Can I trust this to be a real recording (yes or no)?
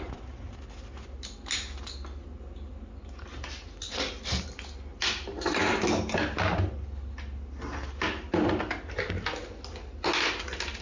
yes